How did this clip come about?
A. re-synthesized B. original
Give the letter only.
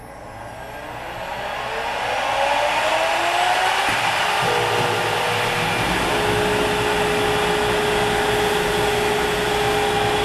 B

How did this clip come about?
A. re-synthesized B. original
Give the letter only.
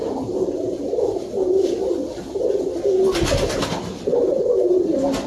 B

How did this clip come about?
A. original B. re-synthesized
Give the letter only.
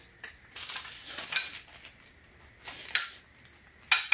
A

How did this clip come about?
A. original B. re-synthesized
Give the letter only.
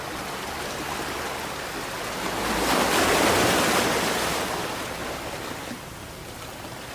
A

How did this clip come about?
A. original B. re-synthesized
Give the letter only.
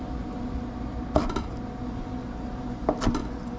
A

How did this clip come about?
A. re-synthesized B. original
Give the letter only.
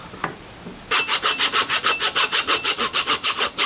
B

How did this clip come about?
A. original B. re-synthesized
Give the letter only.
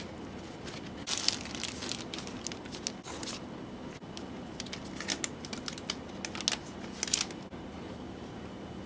A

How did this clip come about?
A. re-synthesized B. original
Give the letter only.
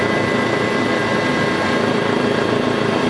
A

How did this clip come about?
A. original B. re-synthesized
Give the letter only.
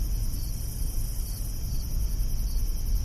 A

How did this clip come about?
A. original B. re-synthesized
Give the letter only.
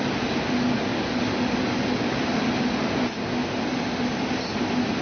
A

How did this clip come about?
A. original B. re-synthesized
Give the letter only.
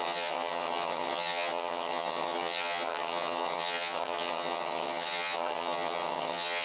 B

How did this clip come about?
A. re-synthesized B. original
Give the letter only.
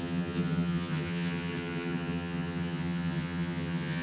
A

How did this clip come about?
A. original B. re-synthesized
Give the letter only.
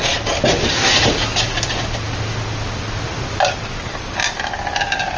A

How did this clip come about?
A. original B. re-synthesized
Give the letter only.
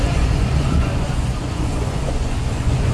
B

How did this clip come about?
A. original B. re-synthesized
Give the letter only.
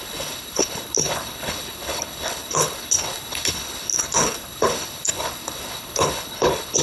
B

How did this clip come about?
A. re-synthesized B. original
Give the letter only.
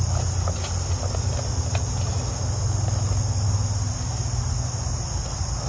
B